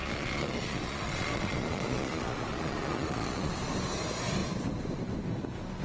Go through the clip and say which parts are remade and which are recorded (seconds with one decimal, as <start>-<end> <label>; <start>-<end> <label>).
0.0-3.5 remade; 3.5-5.8 recorded